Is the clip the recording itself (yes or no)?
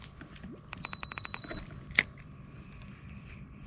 no